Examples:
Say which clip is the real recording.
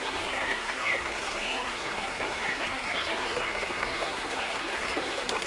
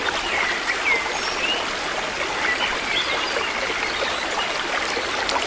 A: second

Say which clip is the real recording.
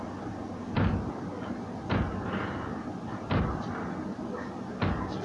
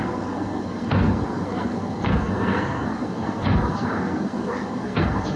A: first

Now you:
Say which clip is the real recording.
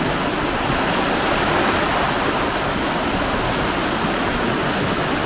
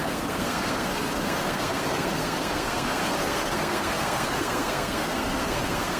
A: first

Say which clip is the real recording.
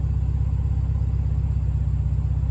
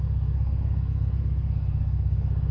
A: first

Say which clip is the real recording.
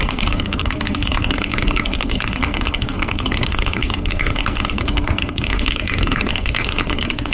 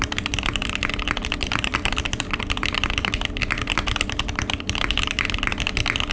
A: second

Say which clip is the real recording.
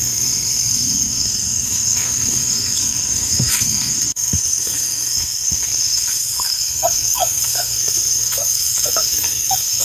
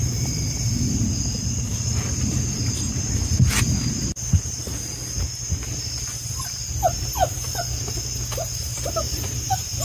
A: second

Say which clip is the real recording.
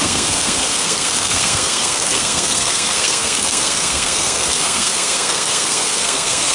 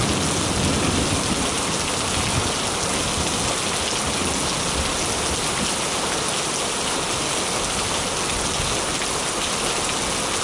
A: second